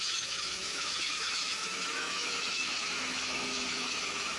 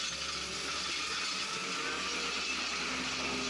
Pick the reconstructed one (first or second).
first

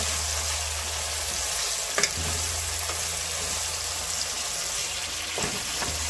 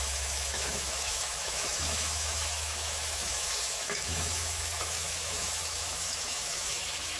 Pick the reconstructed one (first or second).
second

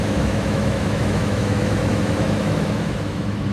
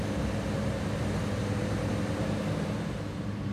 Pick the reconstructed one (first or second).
first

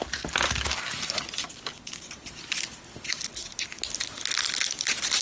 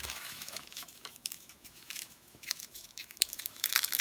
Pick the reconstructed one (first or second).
second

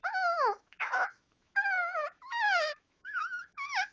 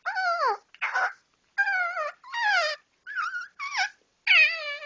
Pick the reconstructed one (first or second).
first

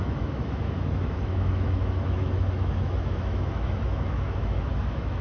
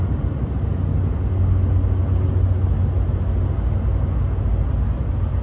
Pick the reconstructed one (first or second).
first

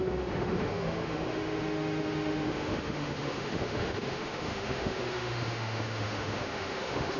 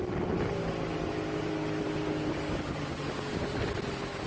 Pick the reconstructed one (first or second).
first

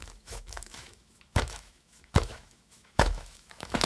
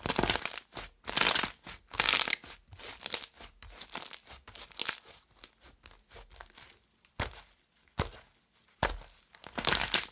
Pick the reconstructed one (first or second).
first